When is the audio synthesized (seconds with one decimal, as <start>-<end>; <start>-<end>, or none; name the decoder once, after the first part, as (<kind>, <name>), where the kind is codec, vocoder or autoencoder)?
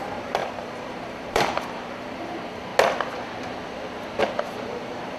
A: 0.0-2.7 (vocoder, BigVGAN v2); 4.2-5.2